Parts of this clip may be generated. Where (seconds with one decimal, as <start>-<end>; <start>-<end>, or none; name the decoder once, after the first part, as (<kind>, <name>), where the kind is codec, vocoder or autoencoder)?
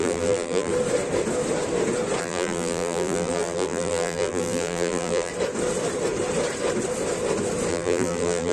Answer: 0.0-0.7 (vocoder, BigVGAN v2); 2.2-5.3; 7.7-8.5